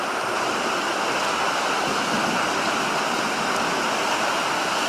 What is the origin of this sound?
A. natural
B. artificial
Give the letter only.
A